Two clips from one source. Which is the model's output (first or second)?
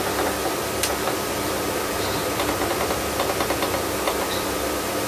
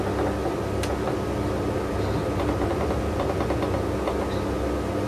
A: first